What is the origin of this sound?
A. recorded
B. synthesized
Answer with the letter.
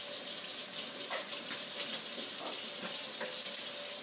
A